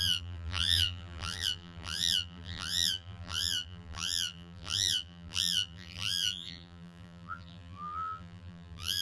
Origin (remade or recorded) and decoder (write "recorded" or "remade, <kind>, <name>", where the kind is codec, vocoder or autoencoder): remade, vocoder, BigVGAN v2